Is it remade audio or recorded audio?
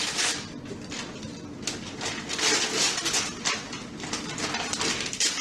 recorded